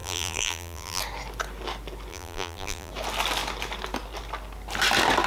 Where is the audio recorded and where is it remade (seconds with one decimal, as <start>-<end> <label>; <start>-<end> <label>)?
0.0-1.0 remade; 1.0-2.1 recorded; 2.1-2.9 remade; 2.9-5.3 recorded